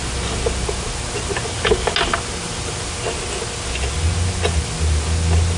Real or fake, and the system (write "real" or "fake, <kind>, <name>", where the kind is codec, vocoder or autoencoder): real